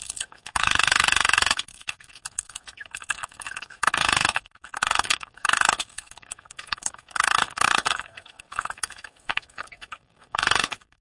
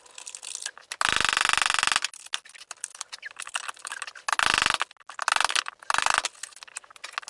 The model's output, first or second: first